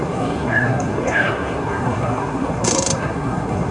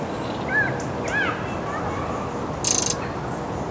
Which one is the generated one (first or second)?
first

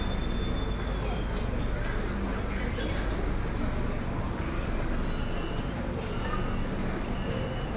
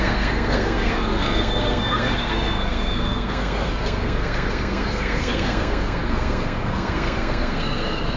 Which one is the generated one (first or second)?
second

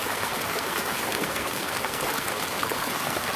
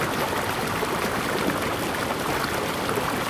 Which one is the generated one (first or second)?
first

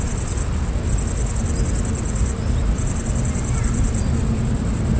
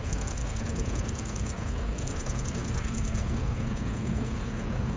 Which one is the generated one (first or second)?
second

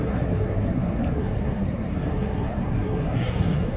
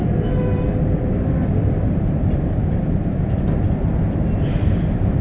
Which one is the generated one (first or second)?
first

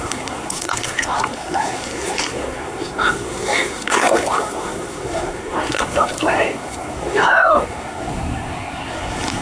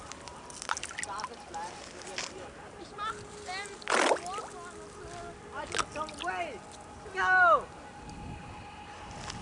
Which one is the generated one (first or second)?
first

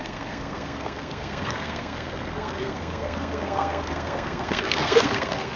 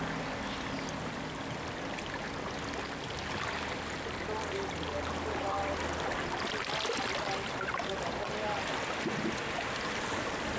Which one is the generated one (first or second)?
first